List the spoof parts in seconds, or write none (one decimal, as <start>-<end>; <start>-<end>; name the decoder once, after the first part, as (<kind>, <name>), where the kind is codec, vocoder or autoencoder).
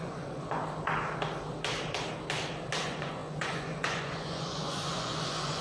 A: 0.0-0.6 (vocoder, Vocos); 2.8-5.6